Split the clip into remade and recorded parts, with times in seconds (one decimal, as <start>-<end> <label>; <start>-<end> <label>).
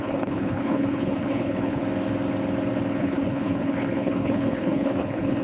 0.0-1.8 remade; 1.8-3.0 recorded; 3.0-5.4 remade